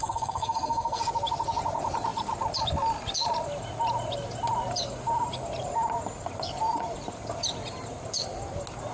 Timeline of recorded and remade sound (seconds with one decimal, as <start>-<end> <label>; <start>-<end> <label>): 0.0-1.0 remade; 1.0-8.9 recorded